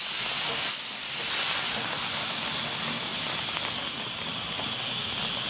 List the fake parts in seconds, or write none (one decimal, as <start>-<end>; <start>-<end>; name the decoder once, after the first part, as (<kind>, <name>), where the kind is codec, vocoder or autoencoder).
none